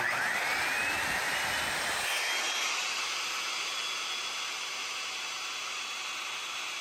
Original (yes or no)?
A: yes